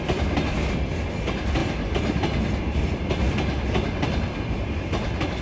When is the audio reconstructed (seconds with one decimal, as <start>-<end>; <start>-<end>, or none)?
1.6-2.6